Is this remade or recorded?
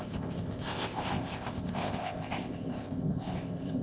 remade